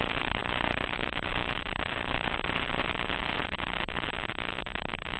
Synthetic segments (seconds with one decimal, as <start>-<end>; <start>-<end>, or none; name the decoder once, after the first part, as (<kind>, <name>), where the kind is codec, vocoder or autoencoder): 0.0-5.2 (vocoder, BigVGAN v2)